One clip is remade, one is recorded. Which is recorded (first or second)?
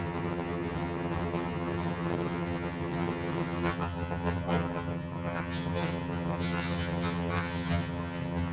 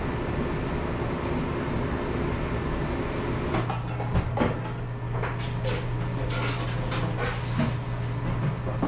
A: second